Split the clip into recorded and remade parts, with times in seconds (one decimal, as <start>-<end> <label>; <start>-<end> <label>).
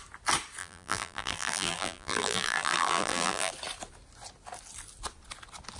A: 0.0-0.6 recorded; 0.6-3.5 remade; 3.5-5.8 recorded